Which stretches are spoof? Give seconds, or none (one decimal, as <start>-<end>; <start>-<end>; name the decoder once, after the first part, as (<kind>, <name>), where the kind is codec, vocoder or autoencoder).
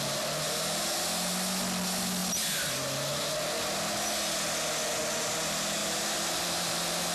5.8-7.1 (vocoder, BigVGAN v2)